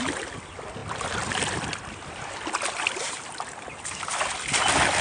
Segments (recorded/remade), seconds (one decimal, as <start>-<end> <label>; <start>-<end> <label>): 0.0-5.0 recorded